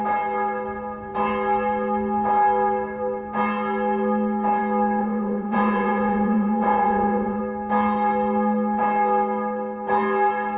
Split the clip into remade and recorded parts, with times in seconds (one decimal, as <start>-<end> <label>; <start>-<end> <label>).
0.0-5.0 recorded; 5.0-7.4 remade; 7.4-10.6 recorded